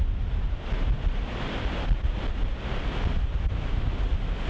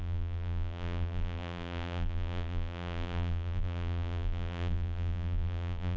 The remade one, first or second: second